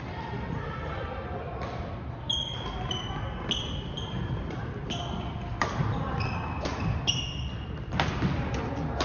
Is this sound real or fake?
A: real